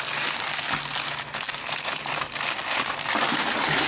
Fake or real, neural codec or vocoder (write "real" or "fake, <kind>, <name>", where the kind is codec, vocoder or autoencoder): real